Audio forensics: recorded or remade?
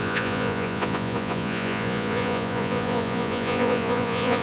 remade